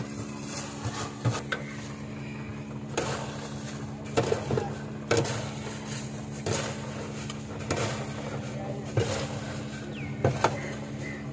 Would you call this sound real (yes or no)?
yes